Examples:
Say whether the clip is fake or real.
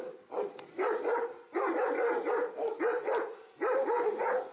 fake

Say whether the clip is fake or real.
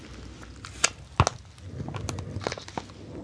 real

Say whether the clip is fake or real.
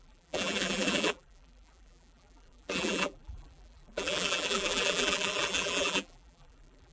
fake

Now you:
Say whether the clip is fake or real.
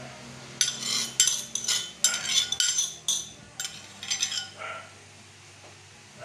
real